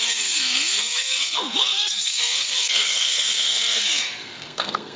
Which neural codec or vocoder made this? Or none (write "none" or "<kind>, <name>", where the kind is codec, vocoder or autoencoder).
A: codec, SNAC